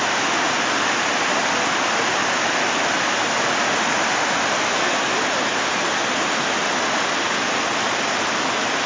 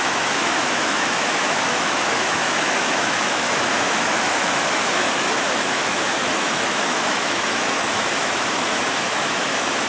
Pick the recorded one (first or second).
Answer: first